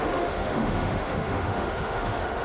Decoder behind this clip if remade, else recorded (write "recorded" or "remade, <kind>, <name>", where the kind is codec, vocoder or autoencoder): remade, autoencoder, DAC-VAE